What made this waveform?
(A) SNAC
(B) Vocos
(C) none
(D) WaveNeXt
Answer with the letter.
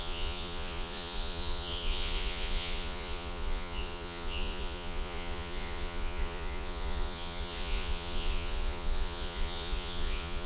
B